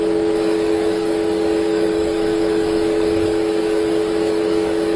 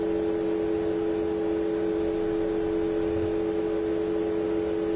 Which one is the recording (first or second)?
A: second